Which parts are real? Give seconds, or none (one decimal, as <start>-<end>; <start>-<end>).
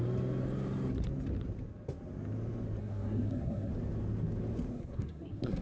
0.0-2.8; 3.7-4.7